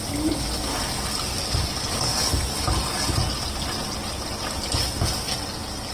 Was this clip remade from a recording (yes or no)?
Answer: no